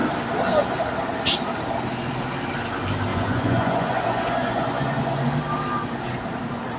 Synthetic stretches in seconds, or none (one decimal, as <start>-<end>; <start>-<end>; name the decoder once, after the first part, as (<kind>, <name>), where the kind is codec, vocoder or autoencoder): 3.1-5.3 (vocoder, Vocos)